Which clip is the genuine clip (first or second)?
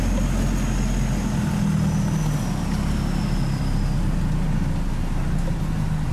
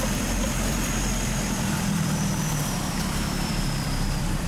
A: first